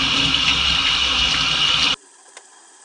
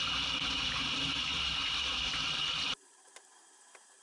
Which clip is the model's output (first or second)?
second